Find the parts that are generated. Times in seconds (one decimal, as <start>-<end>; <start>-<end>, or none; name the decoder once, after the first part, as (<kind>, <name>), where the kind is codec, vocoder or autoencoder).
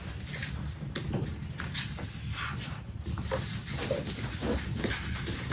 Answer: none